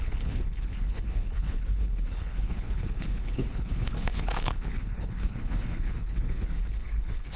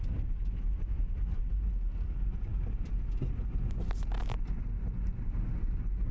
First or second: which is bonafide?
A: second